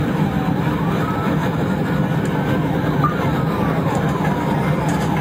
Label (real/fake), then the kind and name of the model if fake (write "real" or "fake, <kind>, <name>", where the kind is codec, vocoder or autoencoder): real